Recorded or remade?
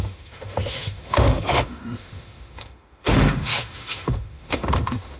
remade